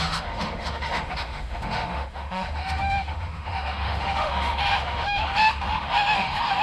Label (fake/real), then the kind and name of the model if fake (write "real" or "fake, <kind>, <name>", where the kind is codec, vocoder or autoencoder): fake, autoencoder, DAC-VAE